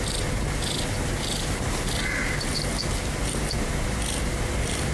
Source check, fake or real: real